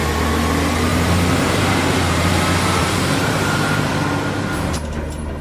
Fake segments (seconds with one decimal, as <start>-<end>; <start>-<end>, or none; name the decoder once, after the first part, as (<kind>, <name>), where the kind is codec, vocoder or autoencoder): 0.9-2.4 (vocoder, BigVGAN v2); 2.8-3.9

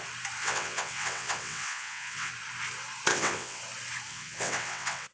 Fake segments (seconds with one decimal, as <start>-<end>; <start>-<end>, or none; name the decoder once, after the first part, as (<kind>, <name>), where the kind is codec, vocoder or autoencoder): 0.4-2.3 (vocoder, WaveNeXt); 3.1-3.6; 4.1-5.1

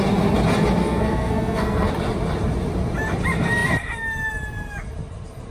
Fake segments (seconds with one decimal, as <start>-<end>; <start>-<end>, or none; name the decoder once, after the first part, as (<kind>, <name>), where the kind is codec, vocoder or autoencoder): 0.8-1.9 (codec, SNAC)

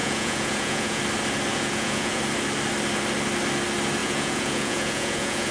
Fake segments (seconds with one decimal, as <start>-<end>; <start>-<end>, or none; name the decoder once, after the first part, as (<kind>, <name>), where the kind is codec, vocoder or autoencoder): 0.0-1.0 (vocoder, Vocos); 1.5-2.2; 4.0-5.5

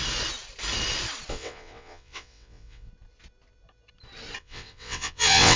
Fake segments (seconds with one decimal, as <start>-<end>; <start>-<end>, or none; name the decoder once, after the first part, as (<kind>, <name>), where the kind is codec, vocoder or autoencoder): 1.3-2.9 (vocoder, WaveNeXt); 4.4-5.6

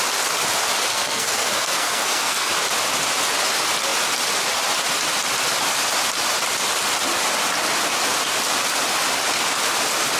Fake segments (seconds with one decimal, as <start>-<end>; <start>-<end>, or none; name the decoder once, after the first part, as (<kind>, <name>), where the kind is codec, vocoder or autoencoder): 0.9-2.5 (codec, SNAC)